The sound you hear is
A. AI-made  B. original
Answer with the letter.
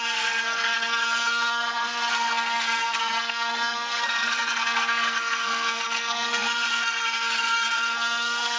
A